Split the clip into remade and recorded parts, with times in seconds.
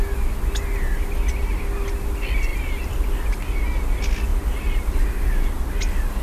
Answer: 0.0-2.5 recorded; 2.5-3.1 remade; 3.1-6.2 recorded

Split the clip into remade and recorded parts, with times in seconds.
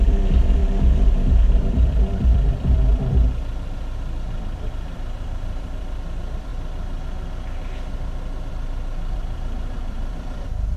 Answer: 0.0-6.5 remade; 6.5-8.5 recorded; 8.5-10.8 remade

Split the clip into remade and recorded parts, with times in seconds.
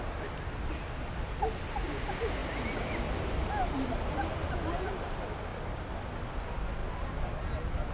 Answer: 0.0-7.9 recorded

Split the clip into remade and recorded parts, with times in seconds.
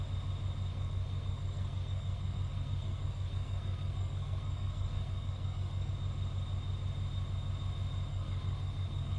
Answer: 0.0-0.7 recorded; 0.7-5.9 remade; 5.9-8.1 recorded; 8.1-9.2 remade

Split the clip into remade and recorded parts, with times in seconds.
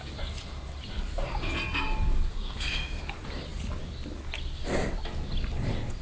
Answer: 0.0-2.3 recorded; 2.3-3.0 remade; 3.0-6.0 recorded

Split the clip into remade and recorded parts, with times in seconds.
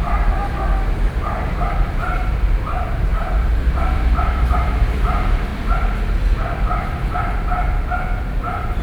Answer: 0.0-0.4 remade; 0.4-2.3 recorded; 2.3-5.5 remade; 5.5-8.4 recorded; 8.4-8.8 remade